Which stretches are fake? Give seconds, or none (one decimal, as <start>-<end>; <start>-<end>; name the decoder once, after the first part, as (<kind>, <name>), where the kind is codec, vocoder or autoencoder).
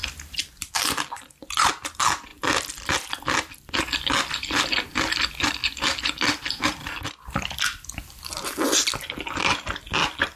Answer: none